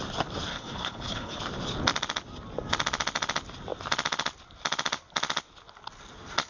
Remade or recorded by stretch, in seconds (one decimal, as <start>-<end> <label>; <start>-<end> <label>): 0.0-0.5 recorded; 0.5-1.4 remade; 1.4-6.5 recorded